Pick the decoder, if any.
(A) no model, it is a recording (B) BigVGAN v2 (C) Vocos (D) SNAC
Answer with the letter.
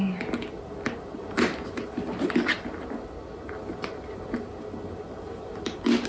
A